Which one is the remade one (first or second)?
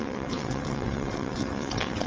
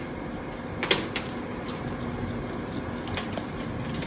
first